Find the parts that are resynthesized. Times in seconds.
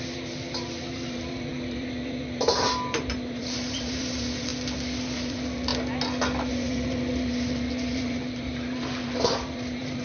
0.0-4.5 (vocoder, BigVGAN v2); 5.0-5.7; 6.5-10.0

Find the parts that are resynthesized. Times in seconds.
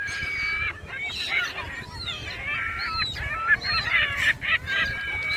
none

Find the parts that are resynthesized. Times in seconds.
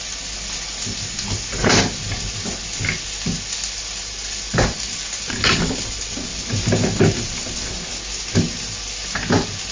none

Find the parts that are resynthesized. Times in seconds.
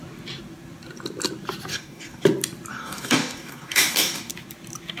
1.7-2.2 (codec, DAC); 2.7-4.3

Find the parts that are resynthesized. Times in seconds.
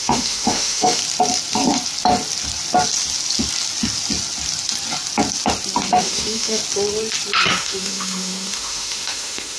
0.0-1.0 (autoencoder, DAC-VAE); 6.0-6.6; 7.5-9.6